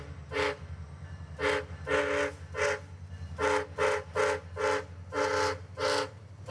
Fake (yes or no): no